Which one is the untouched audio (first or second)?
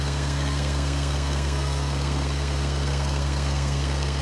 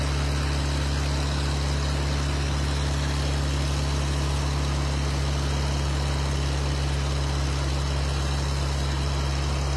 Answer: second